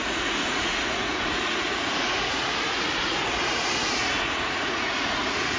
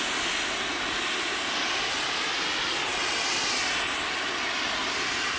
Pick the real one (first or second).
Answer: second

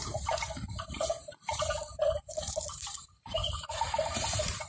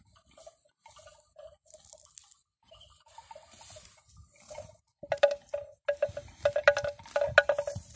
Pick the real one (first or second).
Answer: second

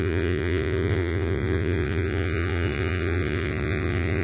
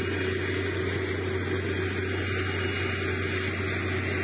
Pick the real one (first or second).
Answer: second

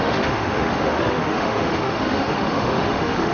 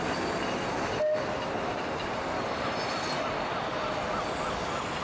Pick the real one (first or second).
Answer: second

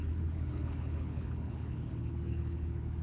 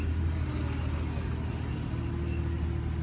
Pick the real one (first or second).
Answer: second